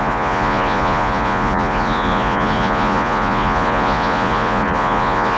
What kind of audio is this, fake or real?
fake